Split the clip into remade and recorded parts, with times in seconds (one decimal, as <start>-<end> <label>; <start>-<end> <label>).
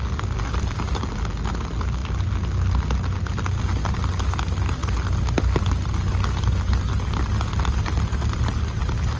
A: 0.0-9.2 recorded